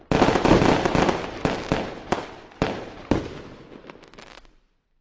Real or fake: real